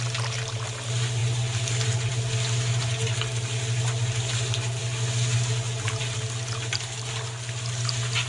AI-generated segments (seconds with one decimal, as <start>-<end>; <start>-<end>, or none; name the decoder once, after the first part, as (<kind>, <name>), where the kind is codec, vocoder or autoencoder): none